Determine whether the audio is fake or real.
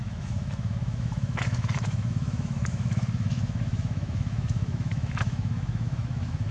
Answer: fake